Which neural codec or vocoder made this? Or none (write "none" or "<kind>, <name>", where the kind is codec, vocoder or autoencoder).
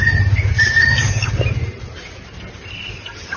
none